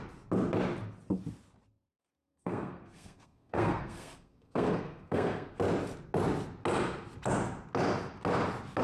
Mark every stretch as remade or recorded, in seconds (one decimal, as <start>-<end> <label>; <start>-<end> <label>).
0.0-1.9 recorded; 1.9-5.6 remade; 5.6-8.8 recorded